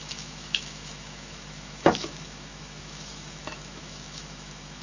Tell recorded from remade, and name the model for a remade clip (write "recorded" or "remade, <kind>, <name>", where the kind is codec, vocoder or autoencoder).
remade, autoencoder, DAC-VAE